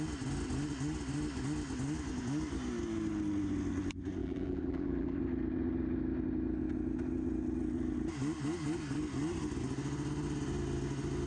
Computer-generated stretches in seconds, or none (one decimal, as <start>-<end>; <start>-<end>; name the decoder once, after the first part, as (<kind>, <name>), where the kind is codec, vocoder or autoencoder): 4.2-5.2 (vocoder, BigVGAN v2)